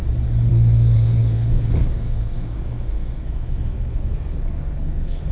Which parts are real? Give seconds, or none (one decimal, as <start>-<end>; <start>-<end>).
0.0-0.5